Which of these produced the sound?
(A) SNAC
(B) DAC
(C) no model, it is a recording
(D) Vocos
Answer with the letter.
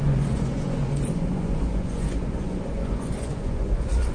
D